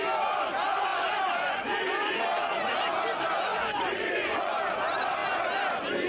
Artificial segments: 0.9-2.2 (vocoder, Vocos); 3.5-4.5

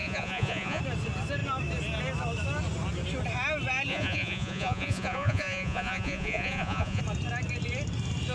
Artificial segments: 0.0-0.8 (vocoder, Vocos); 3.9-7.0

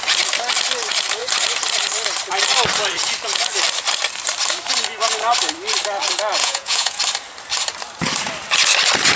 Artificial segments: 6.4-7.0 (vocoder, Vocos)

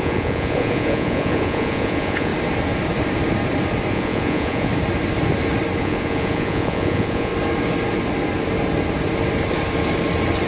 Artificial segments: 0.0-2.3 (vocoder, Vocos); 3.9-4.7; 5.8-7.3

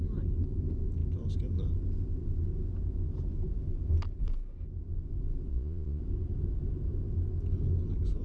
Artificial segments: 5.5-6.0 (vocoder, Vocos)